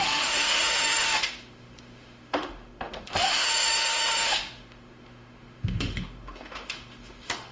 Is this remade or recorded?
remade